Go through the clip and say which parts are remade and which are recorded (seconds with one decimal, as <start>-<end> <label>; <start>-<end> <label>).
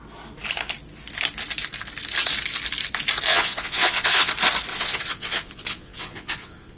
0.0-3.3 recorded; 3.3-4.3 remade; 4.3-4.7 recorded; 4.7-6.8 remade